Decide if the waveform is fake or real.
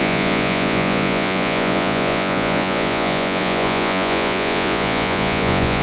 fake